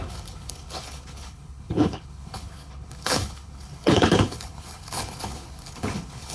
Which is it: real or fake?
fake